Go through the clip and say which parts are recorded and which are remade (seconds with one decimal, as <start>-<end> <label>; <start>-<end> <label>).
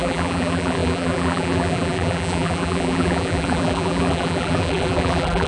0.0-5.5 remade